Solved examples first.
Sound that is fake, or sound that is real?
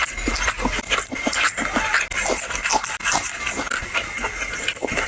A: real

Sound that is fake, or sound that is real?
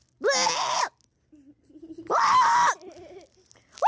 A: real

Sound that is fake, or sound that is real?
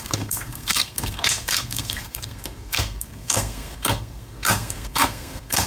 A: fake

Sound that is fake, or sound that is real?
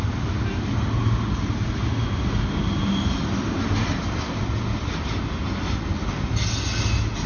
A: real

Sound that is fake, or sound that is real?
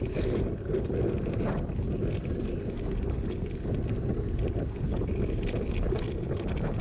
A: real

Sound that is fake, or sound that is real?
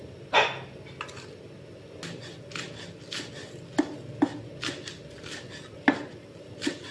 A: real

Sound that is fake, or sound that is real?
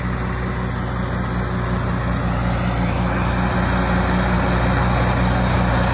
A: real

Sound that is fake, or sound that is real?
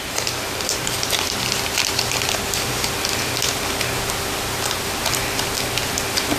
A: real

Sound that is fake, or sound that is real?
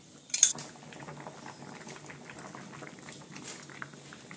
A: real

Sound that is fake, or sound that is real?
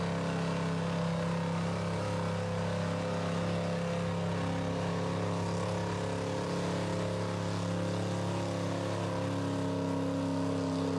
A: real